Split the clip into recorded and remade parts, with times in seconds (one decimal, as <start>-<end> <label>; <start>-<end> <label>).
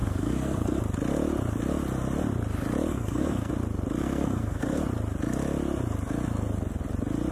0.0-0.8 remade; 0.8-2.9 recorded; 2.9-3.5 remade; 3.5-4.0 recorded; 4.0-4.8 remade; 4.8-7.3 recorded